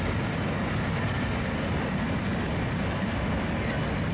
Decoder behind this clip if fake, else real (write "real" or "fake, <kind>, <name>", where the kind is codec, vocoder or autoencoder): real